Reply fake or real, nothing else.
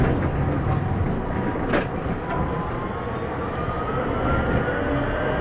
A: real